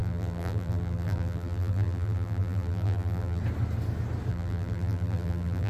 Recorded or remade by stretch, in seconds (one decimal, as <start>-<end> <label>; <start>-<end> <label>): 0.0-3.4 remade; 3.4-4.3 recorded; 4.3-5.7 remade